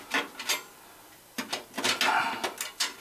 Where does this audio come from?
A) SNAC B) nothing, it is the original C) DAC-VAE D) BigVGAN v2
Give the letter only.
B